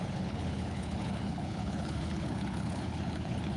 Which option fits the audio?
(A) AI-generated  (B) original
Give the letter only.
A